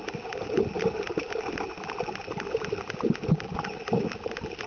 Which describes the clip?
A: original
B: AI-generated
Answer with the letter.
A